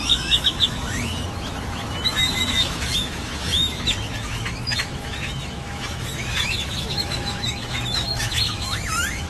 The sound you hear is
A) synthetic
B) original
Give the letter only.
A